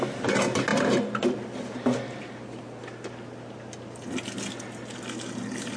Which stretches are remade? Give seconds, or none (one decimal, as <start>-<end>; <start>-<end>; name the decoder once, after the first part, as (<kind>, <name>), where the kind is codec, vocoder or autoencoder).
none